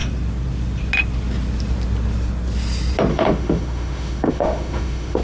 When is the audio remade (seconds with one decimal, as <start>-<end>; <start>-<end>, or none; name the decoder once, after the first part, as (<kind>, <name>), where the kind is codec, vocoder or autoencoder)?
3.1-5.2 (autoencoder, DAC-VAE)